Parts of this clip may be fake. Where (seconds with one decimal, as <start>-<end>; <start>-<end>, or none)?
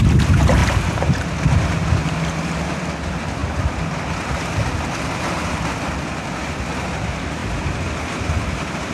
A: 0.0-0.6; 1.9-7.4; 8.2-8.9